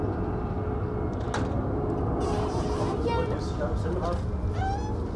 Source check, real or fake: real